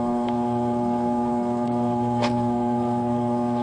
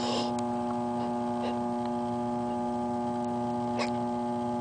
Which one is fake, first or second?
first